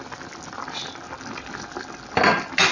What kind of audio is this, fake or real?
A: real